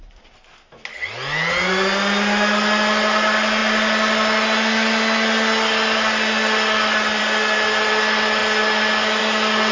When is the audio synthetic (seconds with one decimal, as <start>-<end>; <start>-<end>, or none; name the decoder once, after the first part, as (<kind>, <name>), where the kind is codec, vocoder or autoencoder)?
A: none